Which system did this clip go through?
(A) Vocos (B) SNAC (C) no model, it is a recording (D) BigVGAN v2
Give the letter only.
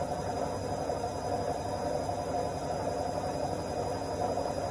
C